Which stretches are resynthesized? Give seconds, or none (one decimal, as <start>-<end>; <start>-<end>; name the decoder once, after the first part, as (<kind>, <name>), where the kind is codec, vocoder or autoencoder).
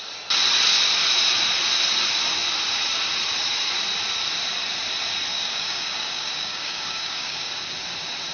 5.3-7.5 (codec, DAC)